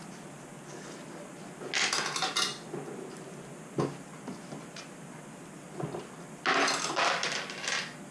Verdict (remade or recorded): recorded